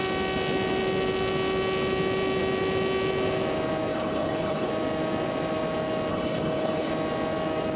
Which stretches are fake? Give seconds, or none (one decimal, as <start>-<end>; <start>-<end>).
3.9-4.7; 6.1-6.9